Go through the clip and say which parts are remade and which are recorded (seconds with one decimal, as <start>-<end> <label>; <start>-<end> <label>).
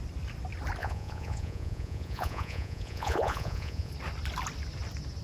0.0-0.8 recorded; 0.8-3.9 remade; 3.9-5.2 recorded